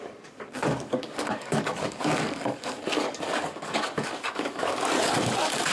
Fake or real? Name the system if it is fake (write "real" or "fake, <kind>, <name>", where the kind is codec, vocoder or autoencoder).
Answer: fake, codec, DAC